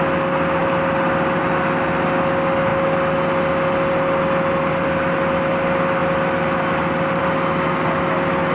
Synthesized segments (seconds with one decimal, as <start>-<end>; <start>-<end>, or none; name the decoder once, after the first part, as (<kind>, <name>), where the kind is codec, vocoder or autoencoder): 0.6-1.4 (vocoder, BigVGAN v2); 2.7-4.7; 6.0-7.2